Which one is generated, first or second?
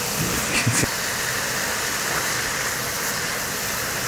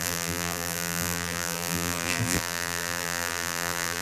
second